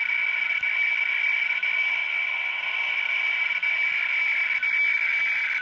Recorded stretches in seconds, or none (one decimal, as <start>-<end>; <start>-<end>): 0.0-2.0; 2.6-5.6